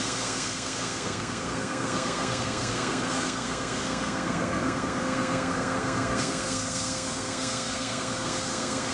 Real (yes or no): no